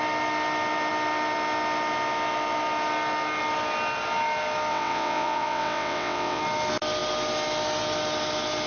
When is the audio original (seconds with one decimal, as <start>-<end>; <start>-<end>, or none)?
0.0-4.7; 6.4-8.7